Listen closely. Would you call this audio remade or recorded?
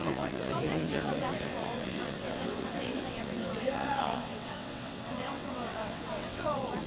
remade